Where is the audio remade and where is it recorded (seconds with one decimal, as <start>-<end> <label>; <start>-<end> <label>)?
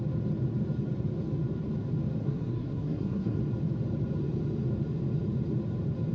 0.0-2.2 recorded; 2.2-3.4 remade; 3.4-6.1 recorded